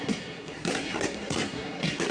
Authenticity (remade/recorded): remade